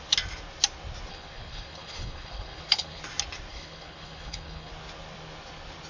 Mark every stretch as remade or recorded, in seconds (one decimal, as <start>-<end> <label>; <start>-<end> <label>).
0.0-1.1 recorded; 1.1-3.0 remade; 3.0-3.5 recorded; 3.5-4.7 remade; 4.7-5.9 recorded